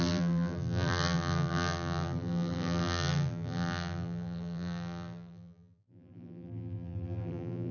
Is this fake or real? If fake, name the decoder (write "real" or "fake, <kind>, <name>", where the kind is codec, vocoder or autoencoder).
fake, vocoder, BigVGAN v2